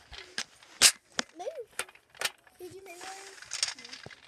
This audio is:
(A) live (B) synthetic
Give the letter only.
A